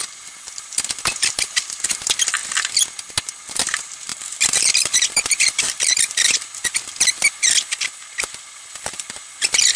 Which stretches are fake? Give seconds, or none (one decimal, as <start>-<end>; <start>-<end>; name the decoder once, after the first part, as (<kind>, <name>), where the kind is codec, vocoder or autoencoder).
0.0-2.4 (vocoder, BigVGAN v2); 3.4-9.8